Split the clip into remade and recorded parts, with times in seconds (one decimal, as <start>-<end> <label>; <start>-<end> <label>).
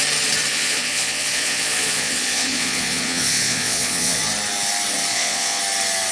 0.0-0.5 recorded; 0.5-4.2 remade; 4.2-5.1 recorded; 5.1-5.6 remade; 5.6-6.1 recorded